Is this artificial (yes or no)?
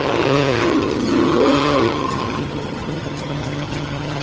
yes